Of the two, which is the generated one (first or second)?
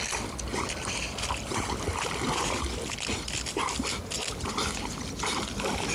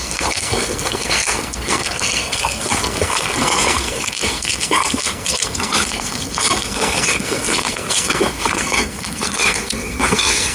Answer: second